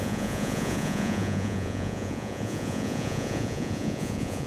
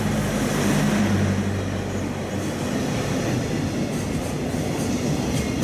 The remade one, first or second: first